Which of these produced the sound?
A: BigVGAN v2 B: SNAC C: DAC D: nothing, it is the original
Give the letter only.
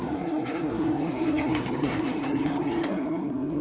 B